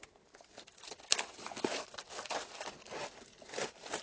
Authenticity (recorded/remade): recorded